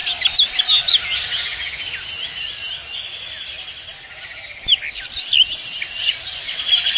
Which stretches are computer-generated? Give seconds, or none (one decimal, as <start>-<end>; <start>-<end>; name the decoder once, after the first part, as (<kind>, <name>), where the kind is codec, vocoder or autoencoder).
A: none